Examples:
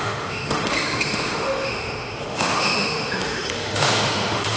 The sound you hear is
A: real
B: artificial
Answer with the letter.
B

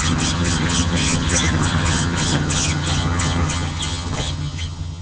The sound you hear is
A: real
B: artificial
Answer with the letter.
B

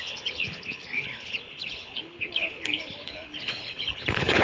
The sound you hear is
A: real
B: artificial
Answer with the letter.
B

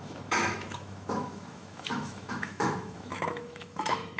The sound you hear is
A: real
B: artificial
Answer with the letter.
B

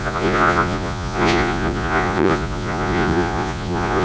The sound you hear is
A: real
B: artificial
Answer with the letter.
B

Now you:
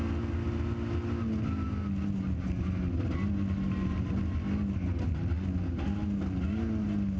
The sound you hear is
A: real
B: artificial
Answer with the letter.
A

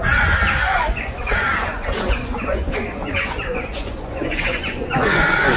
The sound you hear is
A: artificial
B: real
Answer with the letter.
A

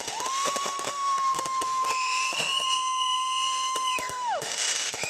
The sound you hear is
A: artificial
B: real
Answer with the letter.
A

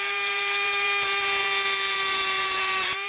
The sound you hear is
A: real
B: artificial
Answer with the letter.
B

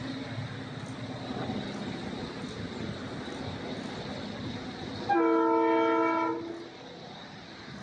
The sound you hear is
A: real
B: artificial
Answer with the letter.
A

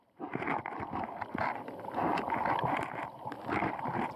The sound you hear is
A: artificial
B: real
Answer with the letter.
B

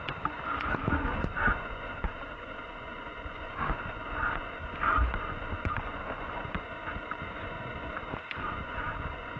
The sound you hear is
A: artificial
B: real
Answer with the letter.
A